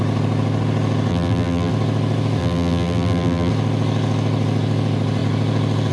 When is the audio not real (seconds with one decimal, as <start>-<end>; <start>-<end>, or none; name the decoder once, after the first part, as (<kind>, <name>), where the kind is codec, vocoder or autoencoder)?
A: 1.1-1.7 (vocoder, BigVGAN v2); 2.4-3.5